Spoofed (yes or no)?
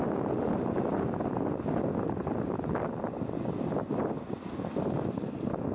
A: no